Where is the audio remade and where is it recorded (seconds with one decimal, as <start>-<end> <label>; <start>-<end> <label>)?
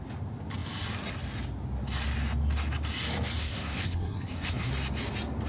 0.0-3.4 recorded; 3.4-4.7 remade; 4.7-5.5 recorded